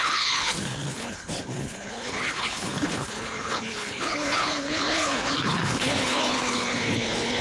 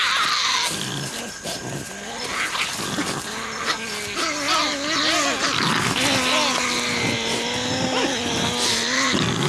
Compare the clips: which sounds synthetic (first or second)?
first